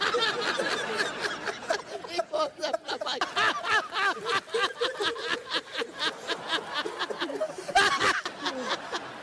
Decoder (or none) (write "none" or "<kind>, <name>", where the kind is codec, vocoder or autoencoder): none